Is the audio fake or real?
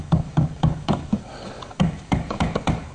fake